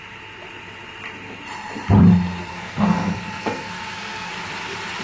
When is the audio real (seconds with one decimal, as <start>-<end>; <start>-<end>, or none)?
0.0-2.5; 4.3-5.0